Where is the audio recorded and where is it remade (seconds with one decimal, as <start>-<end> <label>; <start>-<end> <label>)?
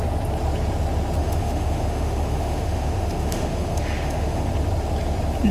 0.0-1.2 recorded; 1.2-4.5 remade; 4.5-5.5 recorded